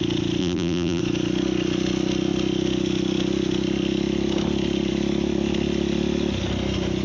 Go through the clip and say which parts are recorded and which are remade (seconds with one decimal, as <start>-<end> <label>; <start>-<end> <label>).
0.0-0.4 recorded; 0.4-1.0 remade; 1.0-7.0 recorded